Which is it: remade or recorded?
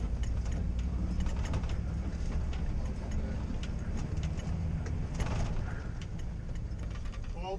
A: remade